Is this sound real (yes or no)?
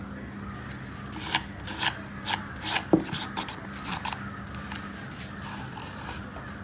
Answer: yes